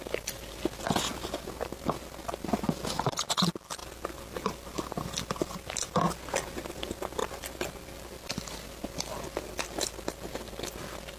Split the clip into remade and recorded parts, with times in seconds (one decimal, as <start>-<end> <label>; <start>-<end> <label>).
0.0-11.2 recorded